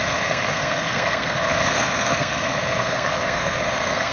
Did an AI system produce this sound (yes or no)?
yes